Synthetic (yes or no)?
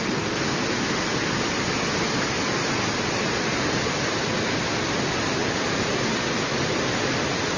no